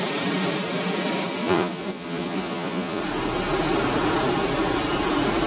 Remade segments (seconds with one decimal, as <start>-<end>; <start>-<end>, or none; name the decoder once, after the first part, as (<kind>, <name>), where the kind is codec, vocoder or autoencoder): 1.4-3.0 (vocoder, Vocos)